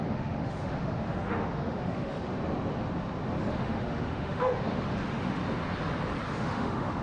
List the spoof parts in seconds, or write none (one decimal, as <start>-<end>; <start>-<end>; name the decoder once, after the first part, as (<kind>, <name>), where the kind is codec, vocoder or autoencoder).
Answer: 0.0-2.2 (autoencoder, DAC-VAE); 3.5-5.4; 6.3-7.0

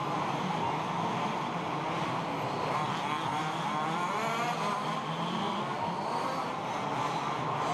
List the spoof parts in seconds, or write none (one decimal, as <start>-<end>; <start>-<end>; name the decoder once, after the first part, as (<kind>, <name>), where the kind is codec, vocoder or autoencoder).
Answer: none

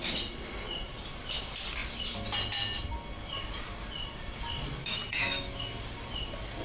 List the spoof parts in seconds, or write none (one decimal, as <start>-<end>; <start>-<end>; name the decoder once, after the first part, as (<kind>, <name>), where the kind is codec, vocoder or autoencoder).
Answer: 4.8-5.8 (autoencoder, DAC-VAE)

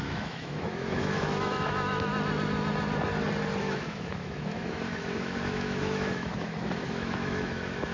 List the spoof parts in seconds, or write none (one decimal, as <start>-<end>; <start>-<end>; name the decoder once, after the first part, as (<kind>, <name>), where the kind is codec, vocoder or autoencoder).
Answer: 0.0-2.1 (autoencoder, DAC-VAE); 3.6-7.9

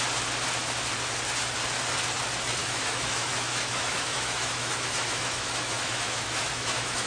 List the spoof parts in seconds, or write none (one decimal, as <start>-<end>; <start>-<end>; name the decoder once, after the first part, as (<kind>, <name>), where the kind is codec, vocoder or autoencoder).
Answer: 2.6-7.1 (autoencoder, DAC-VAE)